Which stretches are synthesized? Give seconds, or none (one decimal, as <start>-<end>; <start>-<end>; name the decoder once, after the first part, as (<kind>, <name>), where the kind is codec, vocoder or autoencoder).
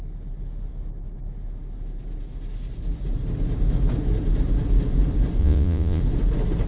5.4-6.0 (vocoder, Vocos)